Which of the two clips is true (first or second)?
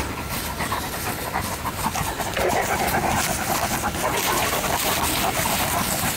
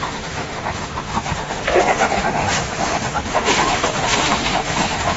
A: first